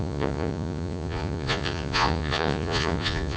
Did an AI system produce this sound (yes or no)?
yes